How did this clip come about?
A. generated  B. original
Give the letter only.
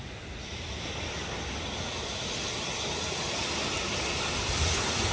B